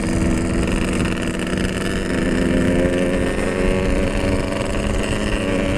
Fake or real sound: real